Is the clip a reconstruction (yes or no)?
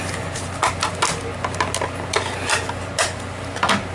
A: no